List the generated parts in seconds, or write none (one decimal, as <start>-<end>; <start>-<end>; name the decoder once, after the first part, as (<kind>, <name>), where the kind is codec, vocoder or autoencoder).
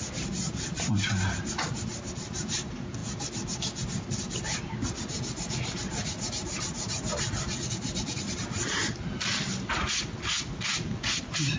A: none